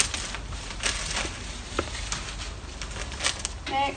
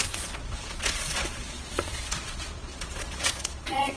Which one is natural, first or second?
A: first